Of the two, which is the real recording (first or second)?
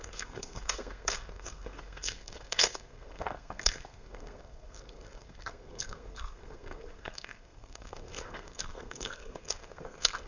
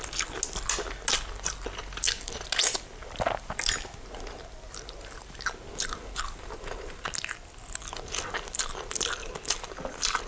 second